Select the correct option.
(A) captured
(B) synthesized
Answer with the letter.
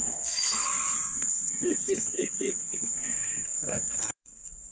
B